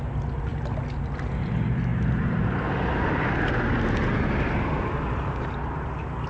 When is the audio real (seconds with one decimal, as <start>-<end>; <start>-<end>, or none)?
0.0-6.3